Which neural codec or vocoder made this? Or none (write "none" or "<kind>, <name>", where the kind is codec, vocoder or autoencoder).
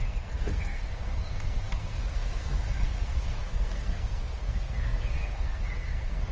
codec, SNAC